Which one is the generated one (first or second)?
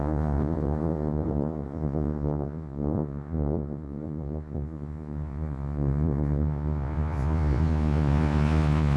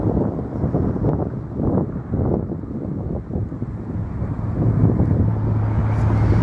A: first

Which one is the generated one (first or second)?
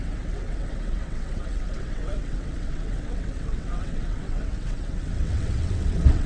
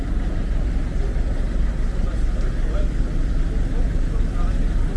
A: first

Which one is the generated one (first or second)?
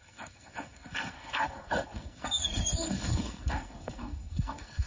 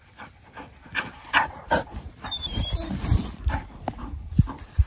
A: first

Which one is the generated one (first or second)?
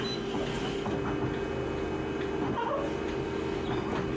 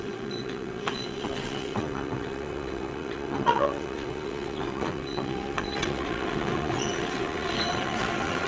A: second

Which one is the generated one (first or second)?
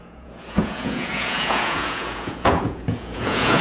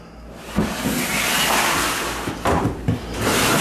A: first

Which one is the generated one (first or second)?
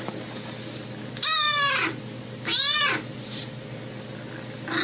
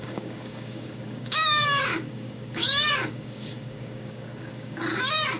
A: second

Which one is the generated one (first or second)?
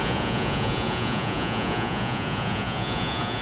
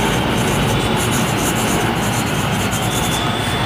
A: first